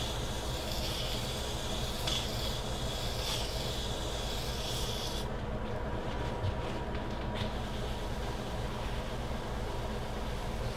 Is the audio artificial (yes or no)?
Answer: no